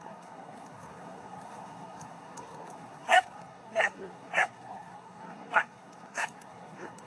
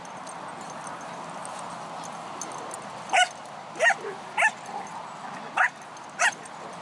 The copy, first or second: first